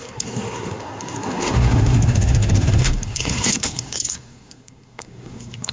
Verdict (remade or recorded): remade